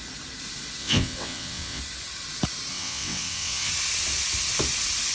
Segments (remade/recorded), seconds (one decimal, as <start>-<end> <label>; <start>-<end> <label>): 0.0-0.8 recorded; 0.8-1.8 remade; 1.8-2.7 recorded; 2.7-3.7 remade; 3.7-5.1 recorded